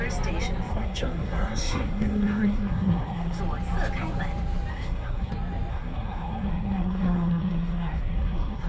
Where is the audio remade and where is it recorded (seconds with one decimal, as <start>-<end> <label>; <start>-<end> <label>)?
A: 0.0-0.7 recorded; 0.7-3.4 remade; 3.4-4.7 recorded; 4.7-5.3 remade; 5.3-5.7 recorded; 5.7-8.7 remade

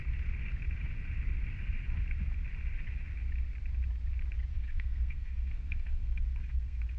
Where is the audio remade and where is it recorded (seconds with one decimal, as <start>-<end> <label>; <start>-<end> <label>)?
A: 0.0-4.5 recorded; 4.5-7.0 remade